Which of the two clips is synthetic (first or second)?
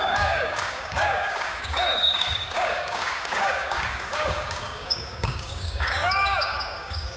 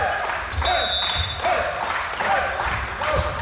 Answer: first